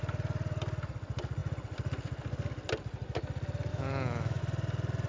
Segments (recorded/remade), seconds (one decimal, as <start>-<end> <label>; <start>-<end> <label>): 0.0-3.7 recorded; 3.7-4.4 remade; 4.4-5.1 recorded